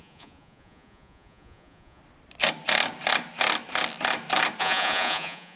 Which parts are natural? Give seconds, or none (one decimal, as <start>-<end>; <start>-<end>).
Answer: 2.0-4.6